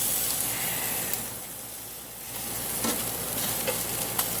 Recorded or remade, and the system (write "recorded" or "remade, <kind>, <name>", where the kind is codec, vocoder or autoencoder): recorded